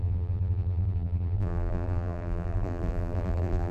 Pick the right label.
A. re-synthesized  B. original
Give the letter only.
A